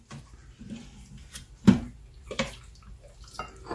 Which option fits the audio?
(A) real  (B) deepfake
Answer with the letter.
A